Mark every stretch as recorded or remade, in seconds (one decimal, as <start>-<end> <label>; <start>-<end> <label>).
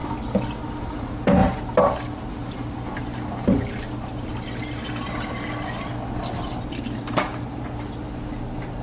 0.0-0.6 recorded; 0.6-1.4 remade; 1.4-2.3 recorded; 2.3-4.3 remade; 4.3-6.4 recorded; 6.4-8.8 remade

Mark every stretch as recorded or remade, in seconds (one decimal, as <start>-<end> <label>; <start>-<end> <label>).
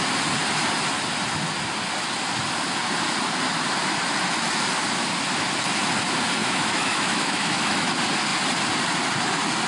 0.0-6.4 recorded; 6.4-7.9 remade; 7.9-9.7 recorded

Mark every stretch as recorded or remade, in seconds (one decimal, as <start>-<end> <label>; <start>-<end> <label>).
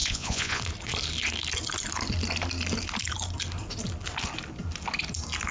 0.0-0.6 remade; 0.6-5.5 recorded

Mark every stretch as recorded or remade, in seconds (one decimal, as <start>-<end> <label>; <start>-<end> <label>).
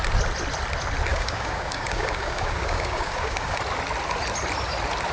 0.0-1.1 recorded; 1.1-3.6 remade; 3.6-5.1 recorded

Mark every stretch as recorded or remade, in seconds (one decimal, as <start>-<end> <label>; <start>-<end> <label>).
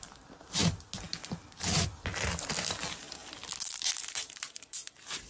0.0-0.6 remade; 0.6-3.8 recorded; 3.8-5.3 remade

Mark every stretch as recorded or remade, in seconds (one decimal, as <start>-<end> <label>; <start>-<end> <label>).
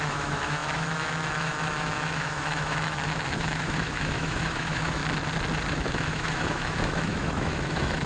0.0-5.0 remade; 5.0-5.7 recorded; 5.7-8.1 remade